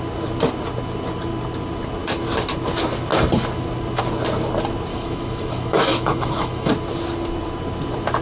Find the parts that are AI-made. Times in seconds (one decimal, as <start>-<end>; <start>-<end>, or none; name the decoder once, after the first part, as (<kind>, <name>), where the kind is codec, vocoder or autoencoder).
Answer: 4.9-6.7 (autoencoder, DAC-VAE)